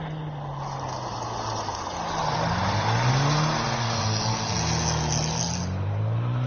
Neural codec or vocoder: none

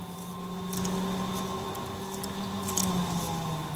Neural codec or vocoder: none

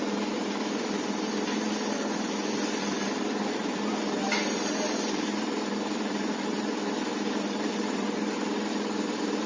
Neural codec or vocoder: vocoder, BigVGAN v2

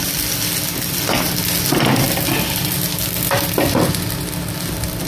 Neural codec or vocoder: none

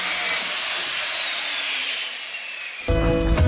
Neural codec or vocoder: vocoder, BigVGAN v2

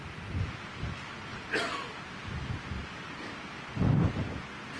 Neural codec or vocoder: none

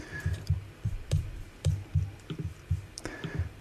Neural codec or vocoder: vocoder, BigVGAN v2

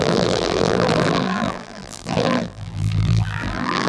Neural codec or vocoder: vocoder, BigVGAN v2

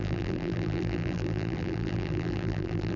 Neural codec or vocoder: vocoder, BigVGAN v2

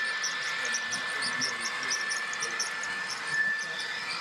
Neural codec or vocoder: none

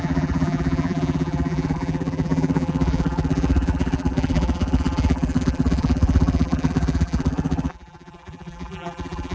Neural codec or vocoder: vocoder, BigVGAN v2